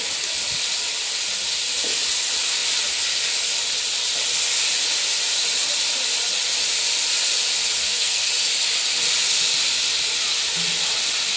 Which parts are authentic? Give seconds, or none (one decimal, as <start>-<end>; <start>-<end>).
0.0-7.8; 8.3-11.4

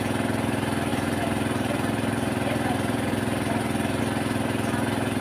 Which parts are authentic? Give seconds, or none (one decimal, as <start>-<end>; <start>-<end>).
0.0-0.9; 4.0-5.2

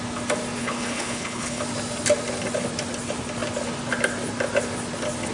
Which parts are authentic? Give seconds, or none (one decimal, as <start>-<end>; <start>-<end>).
0.0-0.6; 1.6-5.3

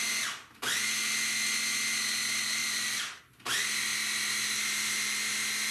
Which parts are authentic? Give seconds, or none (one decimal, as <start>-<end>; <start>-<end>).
0.0-2.6; 3.2-5.7

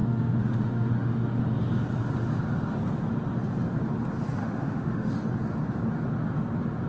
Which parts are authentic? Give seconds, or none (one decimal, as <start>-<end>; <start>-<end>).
1.4-4.4; 5.1-6.9

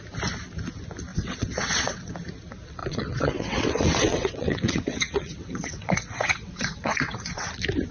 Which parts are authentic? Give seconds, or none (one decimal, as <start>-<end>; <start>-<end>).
0.0-1.1; 2.1-2.8; 7.5-7.9

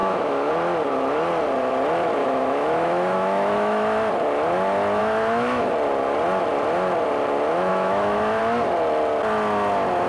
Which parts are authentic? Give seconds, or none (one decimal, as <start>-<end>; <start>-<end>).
0.5-2.2; 4.1-5.0; 5.7-7.7; 8.4-10.1

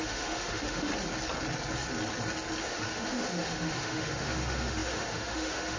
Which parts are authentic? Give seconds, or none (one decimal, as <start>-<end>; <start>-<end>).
0.9-2.6